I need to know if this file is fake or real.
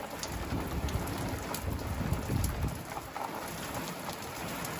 real